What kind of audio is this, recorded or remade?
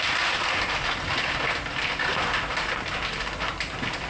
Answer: recorded